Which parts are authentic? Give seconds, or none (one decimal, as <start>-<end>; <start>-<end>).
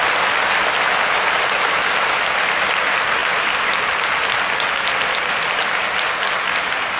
0.0-7.0